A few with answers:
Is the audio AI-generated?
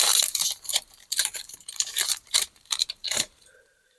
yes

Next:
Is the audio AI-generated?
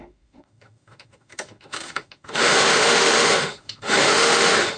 yes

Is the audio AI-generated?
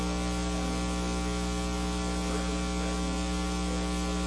no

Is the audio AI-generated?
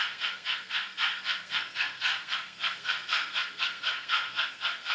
yes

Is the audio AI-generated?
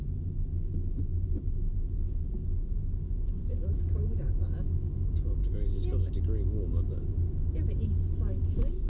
no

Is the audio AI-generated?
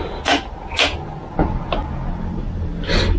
no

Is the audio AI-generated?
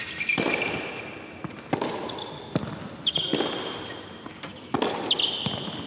no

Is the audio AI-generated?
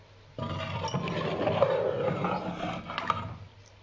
no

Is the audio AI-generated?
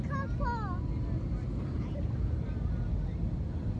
no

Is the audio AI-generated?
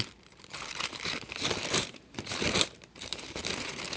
yes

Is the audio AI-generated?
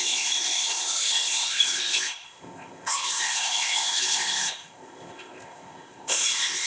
yes